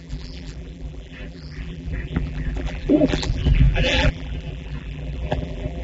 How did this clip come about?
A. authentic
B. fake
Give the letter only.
B